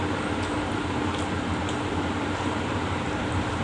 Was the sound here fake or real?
real